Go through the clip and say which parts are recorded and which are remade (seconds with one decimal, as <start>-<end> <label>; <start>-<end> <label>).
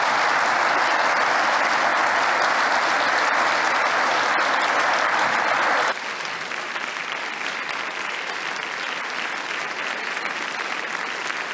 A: 0.0-11.5 recorded